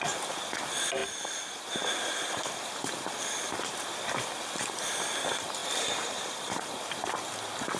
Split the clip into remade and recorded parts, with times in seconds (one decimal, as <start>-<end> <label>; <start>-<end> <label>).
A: 0.0-5.6 recorded; 5.6-6.8 remade; 6.8-7.8 recorded